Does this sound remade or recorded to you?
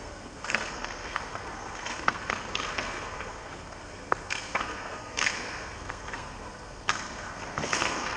remade